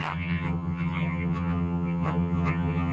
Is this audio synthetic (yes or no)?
yes